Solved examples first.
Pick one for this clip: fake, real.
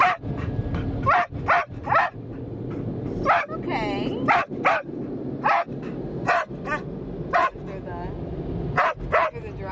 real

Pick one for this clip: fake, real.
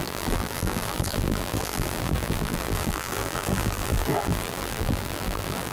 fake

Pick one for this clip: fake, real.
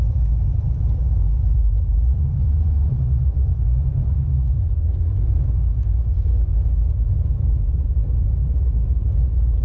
fake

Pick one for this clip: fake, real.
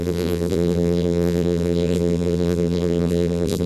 fake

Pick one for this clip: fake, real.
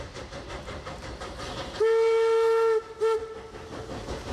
real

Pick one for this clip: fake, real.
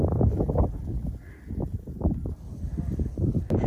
real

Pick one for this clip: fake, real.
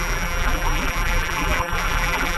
fake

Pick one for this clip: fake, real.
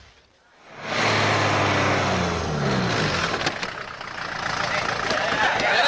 real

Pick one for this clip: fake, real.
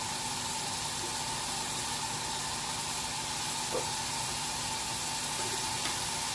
real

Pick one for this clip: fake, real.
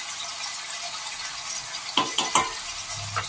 real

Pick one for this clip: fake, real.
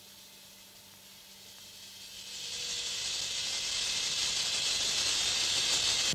real